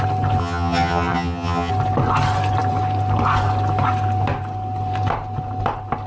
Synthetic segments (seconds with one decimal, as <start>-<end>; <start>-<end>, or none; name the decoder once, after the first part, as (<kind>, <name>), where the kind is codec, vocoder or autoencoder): 0.4-1.7 (vocoder, HiFi-GAN)